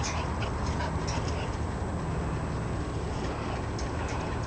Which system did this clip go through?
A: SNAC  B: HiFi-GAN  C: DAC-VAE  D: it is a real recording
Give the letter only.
D